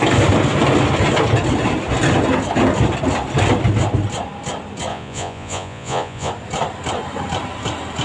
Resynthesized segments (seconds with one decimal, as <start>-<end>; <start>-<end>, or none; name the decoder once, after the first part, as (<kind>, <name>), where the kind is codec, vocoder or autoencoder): 4.9-6.3 (vocoder, Vocos)